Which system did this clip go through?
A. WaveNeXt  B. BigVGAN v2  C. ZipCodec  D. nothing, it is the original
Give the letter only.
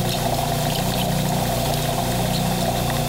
D